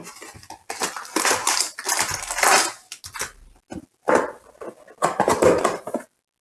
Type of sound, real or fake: real